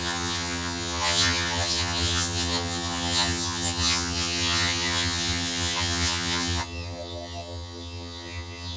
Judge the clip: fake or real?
fake